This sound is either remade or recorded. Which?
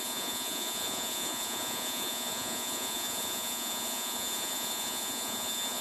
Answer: remade